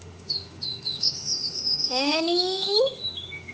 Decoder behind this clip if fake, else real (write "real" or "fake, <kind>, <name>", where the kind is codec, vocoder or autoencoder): fake, autoencoder, DAC-VAE